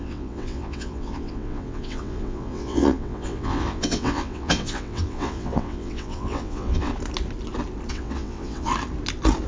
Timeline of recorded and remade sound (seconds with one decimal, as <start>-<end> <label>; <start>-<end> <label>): 0.0-6.9 remade; 6.9-7.9 recorded; 7.9-8.7 remade; 8.7-9.5 recorded

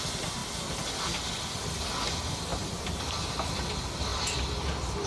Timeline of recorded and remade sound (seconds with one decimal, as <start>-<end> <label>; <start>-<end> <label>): 0.0-5.1 recorded

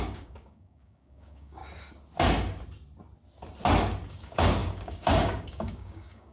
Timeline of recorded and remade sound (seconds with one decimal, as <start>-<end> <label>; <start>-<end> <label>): 0.0-1.6 remade; 1.6-4.1 recorded; 4.1-6.3 remade

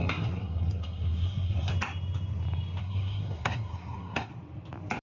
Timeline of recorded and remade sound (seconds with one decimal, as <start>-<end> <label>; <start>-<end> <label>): 0.0-1.7 remade; 1.7-2.8 recorded; 2.8-4.3 remade; 4.3-5.0 recorded

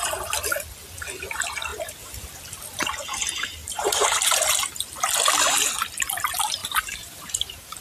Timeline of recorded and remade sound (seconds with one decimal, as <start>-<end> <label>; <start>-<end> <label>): 0.0-3.6 recorded; 3.6-4.6 remade; 4.6-6.6 recorded; 6.6-7.8 remade